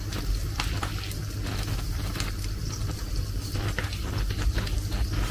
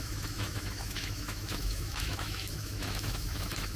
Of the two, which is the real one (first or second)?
first